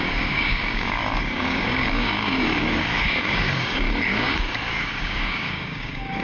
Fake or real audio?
fake